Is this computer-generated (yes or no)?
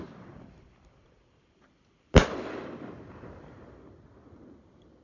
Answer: yes